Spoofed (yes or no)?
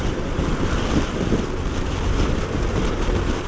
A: no